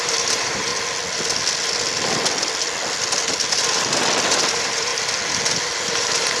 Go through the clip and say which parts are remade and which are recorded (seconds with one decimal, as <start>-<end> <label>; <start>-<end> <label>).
0.0-0.7 remade; 0.7-4.5 recorded; 4.5-4.9 remade; 4.9-5.8 recorded; 5.8-6.4 remade